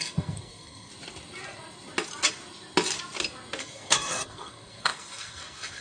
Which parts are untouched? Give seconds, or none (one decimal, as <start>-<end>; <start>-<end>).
0.9-3.6